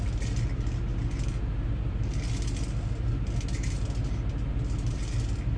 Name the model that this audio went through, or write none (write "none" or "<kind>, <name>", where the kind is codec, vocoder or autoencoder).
none